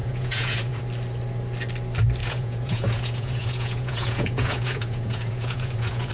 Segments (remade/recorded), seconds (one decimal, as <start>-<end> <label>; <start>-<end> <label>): 0.0-0.8 remade; 0.8-2.2 recorded; 2.2-6.1 remade